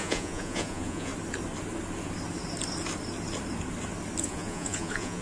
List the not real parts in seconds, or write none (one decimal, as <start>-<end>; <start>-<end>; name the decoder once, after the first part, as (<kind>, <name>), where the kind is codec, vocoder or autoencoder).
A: 0.0-1.1 (vocoder, Vocos); 4.2-5.2